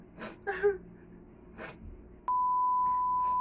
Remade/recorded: recorded